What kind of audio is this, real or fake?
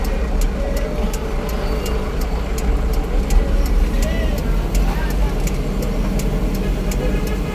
real